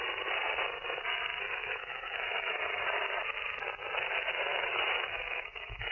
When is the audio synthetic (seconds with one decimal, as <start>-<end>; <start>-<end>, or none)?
1.6-2.6; 4.5-5.9

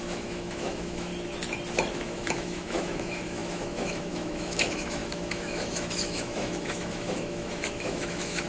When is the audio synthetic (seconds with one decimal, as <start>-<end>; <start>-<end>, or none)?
0.0-1.1; 1.9-8.5

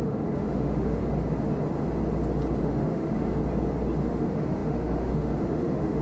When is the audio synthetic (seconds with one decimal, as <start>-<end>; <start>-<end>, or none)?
0.0-1.0; 2.6-3.4; 4.0-6.0

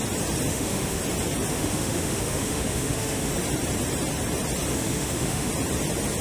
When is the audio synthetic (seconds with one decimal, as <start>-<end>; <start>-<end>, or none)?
0.5-1.0; 1.5-3.3; 4.7-5.5

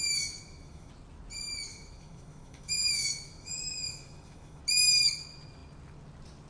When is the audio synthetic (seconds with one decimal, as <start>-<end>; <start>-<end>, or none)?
0.0-0.9; 1.7-4.6

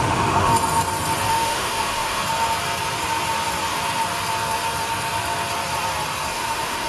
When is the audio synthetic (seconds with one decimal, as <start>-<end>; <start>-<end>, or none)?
0.0-0.5; 1.3-2.2; 6.3-6.9

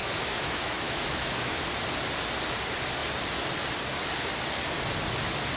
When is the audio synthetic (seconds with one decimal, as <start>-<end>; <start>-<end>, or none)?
0.0-1.6